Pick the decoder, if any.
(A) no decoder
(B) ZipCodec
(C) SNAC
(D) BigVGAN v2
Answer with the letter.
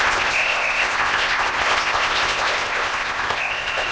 B